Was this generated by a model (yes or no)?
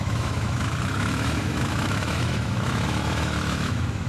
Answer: yes